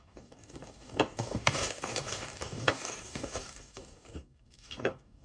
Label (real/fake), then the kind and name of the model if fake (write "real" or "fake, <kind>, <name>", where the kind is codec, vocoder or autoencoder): fake, codec, DAC